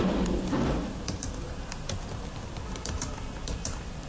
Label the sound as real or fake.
fake